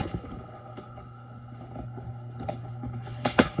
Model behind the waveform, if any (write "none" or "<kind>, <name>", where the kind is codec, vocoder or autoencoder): codec, HILCodec